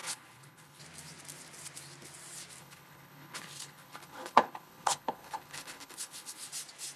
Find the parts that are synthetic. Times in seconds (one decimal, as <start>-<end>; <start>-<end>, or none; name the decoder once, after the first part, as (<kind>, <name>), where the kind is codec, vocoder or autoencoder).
0.0-0.8 (codec, HILCodec); 2.6-6.5